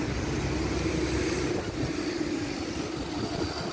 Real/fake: real